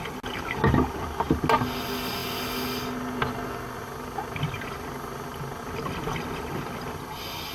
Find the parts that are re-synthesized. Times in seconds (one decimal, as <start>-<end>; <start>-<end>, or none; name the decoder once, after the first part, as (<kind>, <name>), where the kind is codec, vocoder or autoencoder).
none

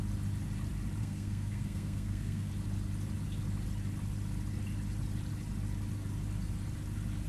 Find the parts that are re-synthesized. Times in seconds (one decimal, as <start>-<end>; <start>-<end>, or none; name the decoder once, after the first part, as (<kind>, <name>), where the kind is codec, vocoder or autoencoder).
1.0-2.5 (codec, SNAC)